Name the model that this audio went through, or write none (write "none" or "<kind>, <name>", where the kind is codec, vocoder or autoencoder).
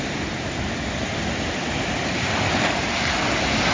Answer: none